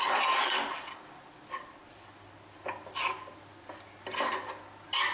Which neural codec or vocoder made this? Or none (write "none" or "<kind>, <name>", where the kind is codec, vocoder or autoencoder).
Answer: none